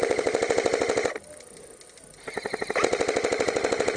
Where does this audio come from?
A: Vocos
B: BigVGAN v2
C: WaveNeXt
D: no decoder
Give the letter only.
D